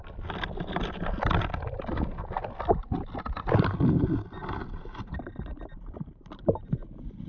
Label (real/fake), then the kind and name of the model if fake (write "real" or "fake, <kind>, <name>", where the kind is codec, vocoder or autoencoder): real